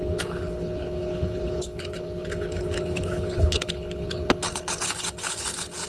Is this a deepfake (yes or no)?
yes